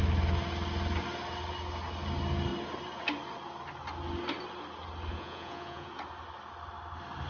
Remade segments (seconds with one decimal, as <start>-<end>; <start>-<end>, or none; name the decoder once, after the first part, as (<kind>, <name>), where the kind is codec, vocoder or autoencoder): 5.1-5.9 (vocoder, Vocos)

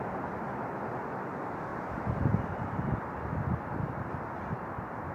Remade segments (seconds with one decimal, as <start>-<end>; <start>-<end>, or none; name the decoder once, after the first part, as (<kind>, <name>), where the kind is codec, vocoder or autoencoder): none

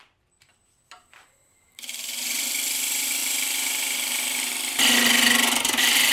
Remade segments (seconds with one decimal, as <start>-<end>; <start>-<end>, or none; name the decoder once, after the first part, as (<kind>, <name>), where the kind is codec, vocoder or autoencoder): 0.6-2.2 (vocoder, BigVGAN v2); 3.2-4.5